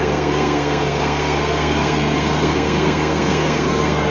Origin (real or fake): fake